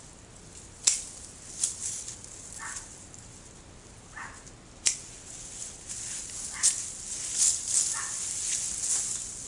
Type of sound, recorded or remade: recorded